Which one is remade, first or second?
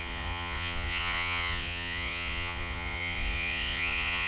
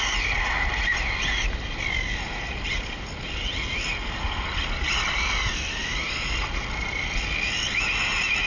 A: first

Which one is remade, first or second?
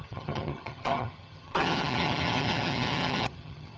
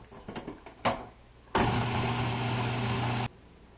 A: first